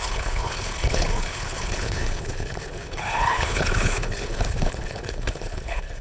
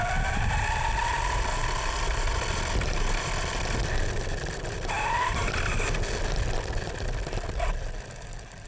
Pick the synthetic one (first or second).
first